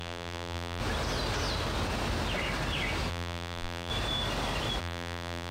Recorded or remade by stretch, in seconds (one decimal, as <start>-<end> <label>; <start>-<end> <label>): 0.0-0.8 remade; 0.8-3.1 recorded; 3.1-3.9 remade; 3.9-4.8 recorded; 4.8-5.5 remade